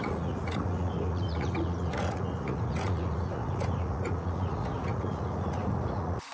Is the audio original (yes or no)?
no